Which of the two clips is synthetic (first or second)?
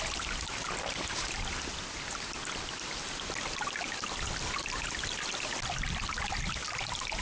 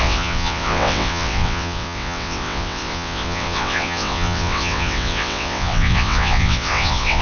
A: second